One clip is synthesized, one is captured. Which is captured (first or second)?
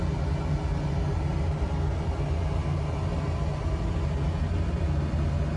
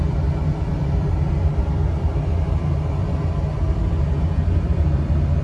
first